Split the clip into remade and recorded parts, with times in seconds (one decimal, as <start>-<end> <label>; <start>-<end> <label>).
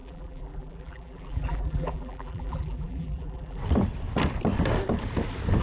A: 0.0-3.6 remade; 3.6-5.6 recorded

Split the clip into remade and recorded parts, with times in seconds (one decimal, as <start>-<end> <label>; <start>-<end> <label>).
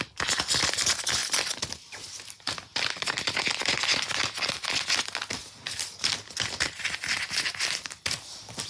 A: 0.0-8.7 recorded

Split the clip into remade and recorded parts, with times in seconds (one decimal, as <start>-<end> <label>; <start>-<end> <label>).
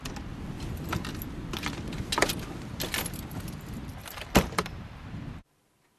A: 0.0-3.9 recorded; 3.9-5.0 remade; 5.0-6.0 recorded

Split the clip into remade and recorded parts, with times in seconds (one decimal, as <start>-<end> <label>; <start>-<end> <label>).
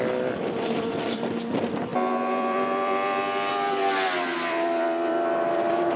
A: 0.0-6.0 remade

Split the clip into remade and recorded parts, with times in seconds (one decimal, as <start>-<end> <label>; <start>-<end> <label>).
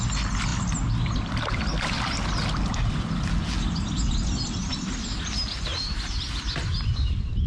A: 0.0-5.7 recorded; 5.7-7.5 remade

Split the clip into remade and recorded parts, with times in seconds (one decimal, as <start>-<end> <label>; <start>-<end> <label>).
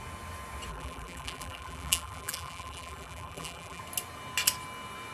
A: 0.0-0.7 recorded; 0.7-3.8 remade; 3.8-5.1 recorded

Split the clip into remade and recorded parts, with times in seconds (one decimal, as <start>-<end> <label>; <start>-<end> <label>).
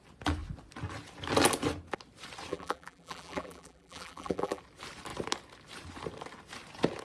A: 0.0-2.5 recorded; 2.5-4.6 remade; 4.6-7.0 recorded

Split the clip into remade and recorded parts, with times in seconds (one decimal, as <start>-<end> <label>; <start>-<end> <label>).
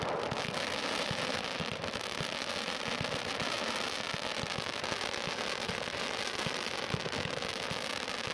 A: 0.0-8.3 recorded